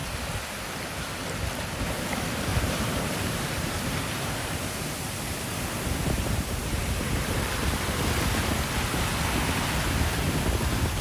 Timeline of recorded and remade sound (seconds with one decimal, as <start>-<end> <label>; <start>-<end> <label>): 0.0-2.5 recorded; 2.5-4.6 remade; 4.6-6.6 recorded; 6.6-8.0 remade; 8.0-11.0 recorded